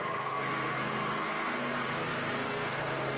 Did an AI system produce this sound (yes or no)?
yes